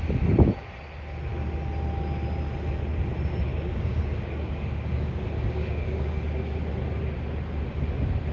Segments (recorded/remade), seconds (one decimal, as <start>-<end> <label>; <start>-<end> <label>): 0.0-3.5 recorded; 3.5-6.6 remade; 6.6-8.3 recorded